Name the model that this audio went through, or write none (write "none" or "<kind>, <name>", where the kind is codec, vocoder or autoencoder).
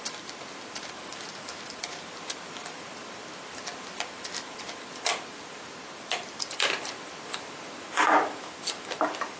vocoder, BigVGAN v2